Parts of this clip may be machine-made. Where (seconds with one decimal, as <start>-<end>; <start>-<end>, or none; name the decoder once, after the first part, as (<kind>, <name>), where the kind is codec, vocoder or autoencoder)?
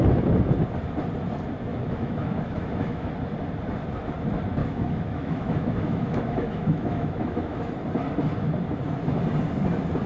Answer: 1.7-3.1 (autoencoder, DAC-VAE); 4.6-7.7